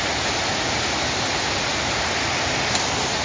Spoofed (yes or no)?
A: no